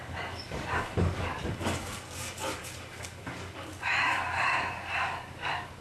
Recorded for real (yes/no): no